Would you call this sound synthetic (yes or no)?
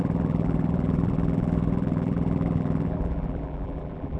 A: yes